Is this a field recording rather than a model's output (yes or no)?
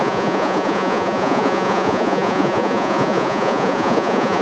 no